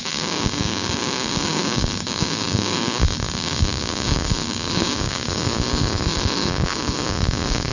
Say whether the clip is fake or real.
fake